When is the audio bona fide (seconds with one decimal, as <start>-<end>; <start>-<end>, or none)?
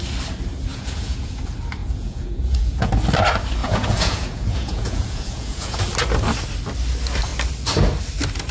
0.0-0.7; 1.4-1.8; 2.9-3.6; 5.8-8.5